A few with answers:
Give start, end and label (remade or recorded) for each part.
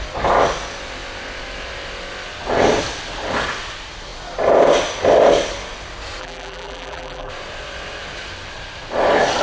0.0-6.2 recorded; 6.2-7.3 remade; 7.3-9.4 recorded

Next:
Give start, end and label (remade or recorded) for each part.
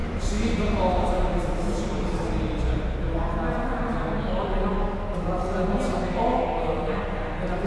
0.0-7.7 recorded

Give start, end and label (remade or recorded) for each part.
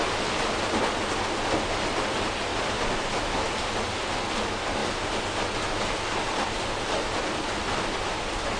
0.0-2.5 recorded; 2.5-3.2 remade; 3.2-8.6 recorded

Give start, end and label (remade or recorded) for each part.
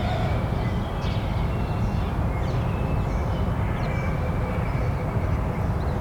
0.0-6.0 recorded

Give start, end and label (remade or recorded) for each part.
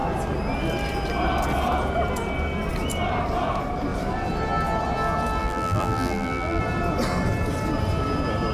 0.0-5.4 recorded; 5.4-6.6 remade; 6.6-8.5 recorded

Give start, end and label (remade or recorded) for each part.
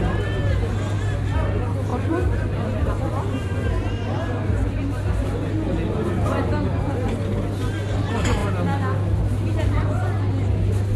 0.0-1.9 recorded; 1.9-3.7 remade; 3.7-11.0 recorded